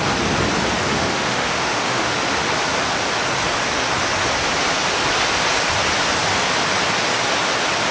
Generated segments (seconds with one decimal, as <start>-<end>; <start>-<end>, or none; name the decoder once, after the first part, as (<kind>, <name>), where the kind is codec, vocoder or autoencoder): 0.9-2.1 (autoencoder, DAC-VAE)